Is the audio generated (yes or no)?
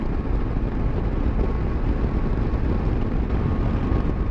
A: no